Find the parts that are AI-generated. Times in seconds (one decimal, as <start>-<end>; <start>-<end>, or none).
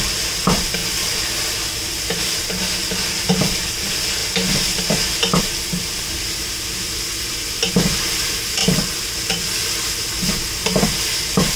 0.0-0.8; 2.3-4.2; 5.4-11.6